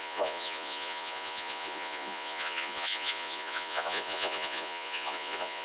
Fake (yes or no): yes